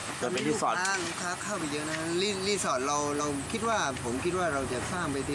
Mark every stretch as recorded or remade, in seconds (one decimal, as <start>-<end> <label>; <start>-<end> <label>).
0.0-5.3 recorded